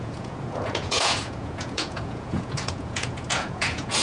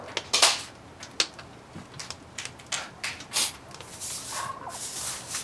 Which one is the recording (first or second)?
second